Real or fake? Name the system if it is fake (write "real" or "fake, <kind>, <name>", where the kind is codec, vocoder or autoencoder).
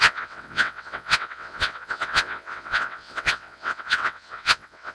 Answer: fake, vocoder, WaveNeXt